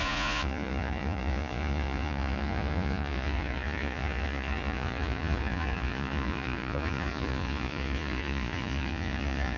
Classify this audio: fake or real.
fake